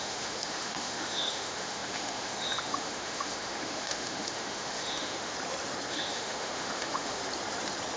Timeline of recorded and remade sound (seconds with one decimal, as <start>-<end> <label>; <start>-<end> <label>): 0.0-5.3 remade; 5.3-5.9 recorded; 5.9-7.2 remade; 7.2-8.0 recorded